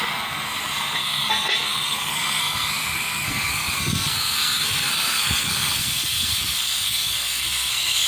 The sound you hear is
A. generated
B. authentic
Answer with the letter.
A